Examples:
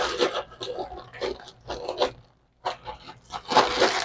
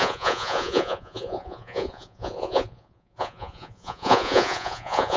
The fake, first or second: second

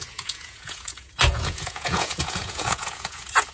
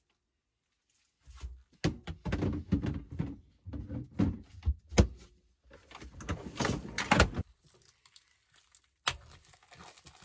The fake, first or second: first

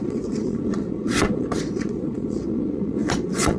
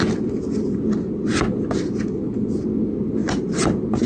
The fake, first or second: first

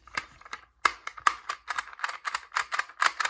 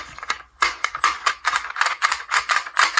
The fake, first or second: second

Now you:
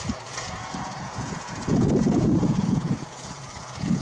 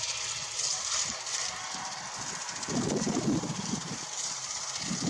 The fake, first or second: first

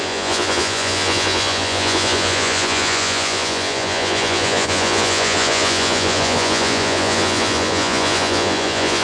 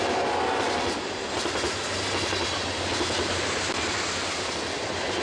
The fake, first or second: first